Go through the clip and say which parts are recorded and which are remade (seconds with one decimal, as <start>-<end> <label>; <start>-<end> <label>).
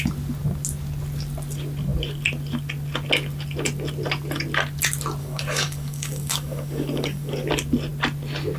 0.0-5.2 recorded; 5.2-7.5 remade; 7.5-8.6 recorded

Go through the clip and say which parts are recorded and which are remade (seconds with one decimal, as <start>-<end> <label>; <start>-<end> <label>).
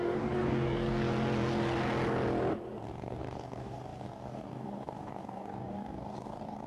0.0-1.0 remade; 1.0-2.9 recorded; 2.9-6.7 remade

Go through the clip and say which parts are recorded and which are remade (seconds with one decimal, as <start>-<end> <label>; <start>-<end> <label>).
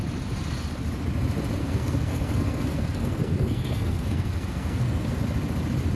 0.0-1.6 recorded; 1.6-5.2 remade; 5.2-6.0 recorded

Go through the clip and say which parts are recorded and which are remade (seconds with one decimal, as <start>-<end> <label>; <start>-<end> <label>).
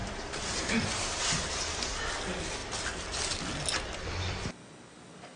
0.0-1.6 remade; 1.6-2.6 recorded; 2.6-3.4 remade; 3.4-5.4 recorded